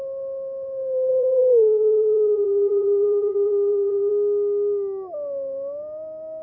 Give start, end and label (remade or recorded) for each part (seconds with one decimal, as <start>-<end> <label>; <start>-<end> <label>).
0.0-1.1 recorded; 1.1-4.1 remade; 4.1-6.4 recorded